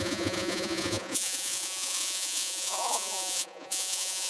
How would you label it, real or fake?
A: fake